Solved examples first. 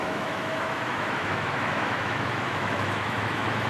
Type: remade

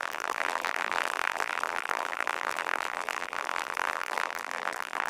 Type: remade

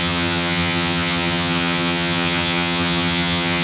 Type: remade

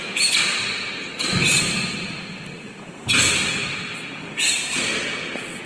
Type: recorded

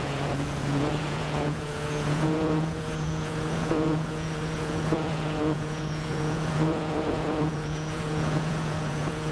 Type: remade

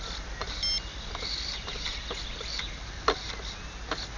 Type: recorded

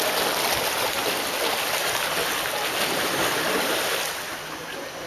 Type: recorded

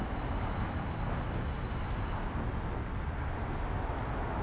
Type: recorded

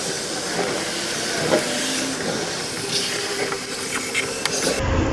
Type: recorded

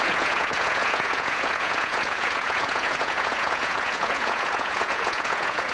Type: remade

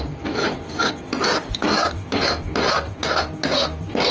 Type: recorded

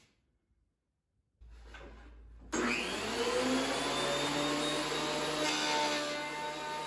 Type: recorded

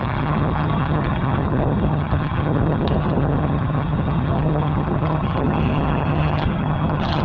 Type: remade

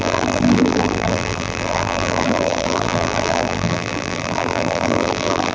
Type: remade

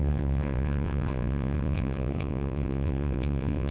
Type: remade